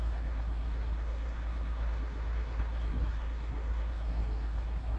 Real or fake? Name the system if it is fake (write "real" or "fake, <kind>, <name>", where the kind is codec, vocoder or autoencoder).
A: fake, codec, SNAC